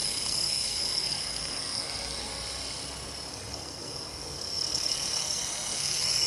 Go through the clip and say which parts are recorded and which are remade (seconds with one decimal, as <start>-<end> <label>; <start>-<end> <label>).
0.0-2.3 remade; 2.3-3.3 recorded; 3.3-6.3 remade